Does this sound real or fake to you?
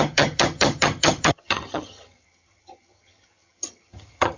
fake